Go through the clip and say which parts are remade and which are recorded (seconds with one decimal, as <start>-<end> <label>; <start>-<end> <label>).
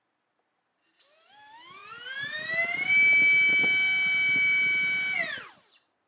0.0-6.1 recorded